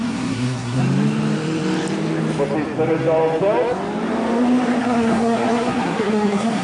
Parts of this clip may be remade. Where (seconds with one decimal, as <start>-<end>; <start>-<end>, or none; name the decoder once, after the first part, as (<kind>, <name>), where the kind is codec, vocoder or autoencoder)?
0.0-0.8 (codec, SNAC); 4.8-6.6